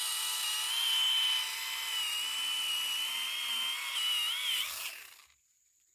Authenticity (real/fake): real